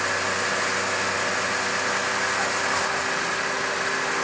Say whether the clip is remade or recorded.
recorded